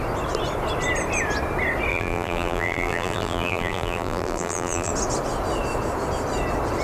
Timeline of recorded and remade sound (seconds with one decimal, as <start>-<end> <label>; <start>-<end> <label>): 0.0-1.9 recorded; 1.9-4.9 remade; 4.9-6.8 recorded